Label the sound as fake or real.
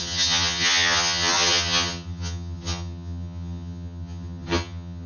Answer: fake